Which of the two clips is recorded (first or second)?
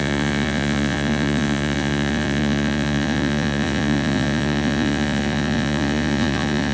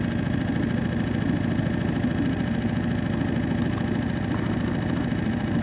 second